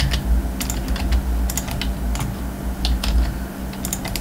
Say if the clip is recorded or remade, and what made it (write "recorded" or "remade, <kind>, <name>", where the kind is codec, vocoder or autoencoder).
recorded